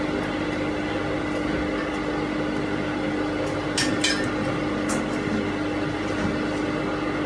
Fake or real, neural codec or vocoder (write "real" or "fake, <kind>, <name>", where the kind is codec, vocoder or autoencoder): real